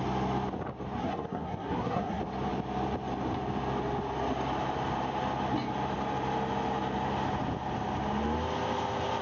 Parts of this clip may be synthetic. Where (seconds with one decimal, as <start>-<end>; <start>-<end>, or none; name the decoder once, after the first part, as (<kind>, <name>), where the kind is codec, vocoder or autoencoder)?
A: 1.0-2.2 (codec, SNAC)